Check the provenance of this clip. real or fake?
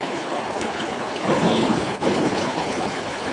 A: fake